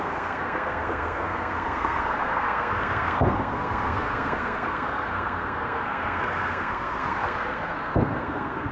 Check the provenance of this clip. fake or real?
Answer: fake